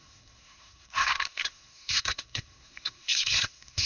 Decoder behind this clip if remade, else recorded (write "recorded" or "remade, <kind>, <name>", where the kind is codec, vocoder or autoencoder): remade, codec, SNAC